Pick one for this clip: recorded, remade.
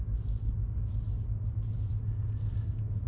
recorded